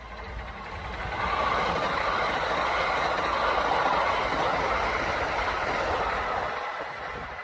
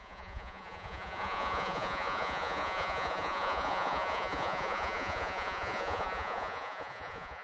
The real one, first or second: first